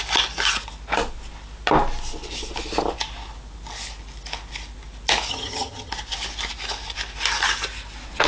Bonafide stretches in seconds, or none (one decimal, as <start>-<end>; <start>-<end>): 0.0-5.3; 5.9-8.3